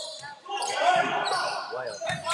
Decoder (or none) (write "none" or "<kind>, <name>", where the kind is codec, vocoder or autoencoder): vocoder, BigVGAN v2